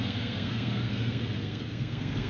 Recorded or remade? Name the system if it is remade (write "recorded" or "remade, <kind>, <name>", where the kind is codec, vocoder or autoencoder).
remade, codec, SNAC